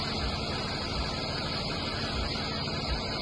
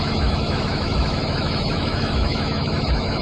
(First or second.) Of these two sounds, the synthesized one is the second